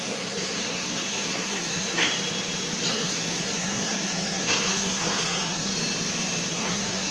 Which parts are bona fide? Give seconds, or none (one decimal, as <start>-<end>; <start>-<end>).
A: 2.1-2.9; 5.7-6.5